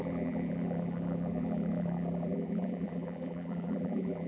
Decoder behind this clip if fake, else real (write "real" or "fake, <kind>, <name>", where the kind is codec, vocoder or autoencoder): fake, vocoder, BigVGAN v2